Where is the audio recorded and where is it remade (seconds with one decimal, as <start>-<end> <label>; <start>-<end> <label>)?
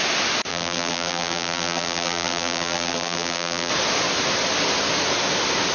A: 0.0-0.5 recorded; 0.5-3.7 remade; 3.7-5.7 recorded